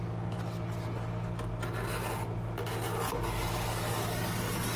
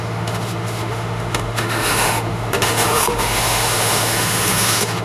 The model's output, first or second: second